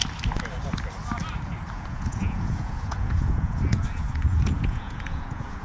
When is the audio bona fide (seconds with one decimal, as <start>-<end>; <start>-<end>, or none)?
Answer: 0.0-1.7